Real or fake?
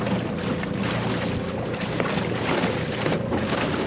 real